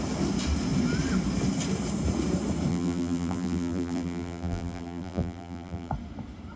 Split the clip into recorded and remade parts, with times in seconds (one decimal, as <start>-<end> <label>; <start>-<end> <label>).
0.0-2.7 recorded; 2.7-5.9 remade; 5.9-6.6 recorded